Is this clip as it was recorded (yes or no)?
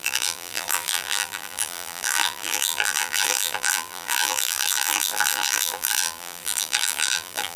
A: no